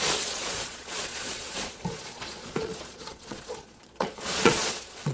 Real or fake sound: fake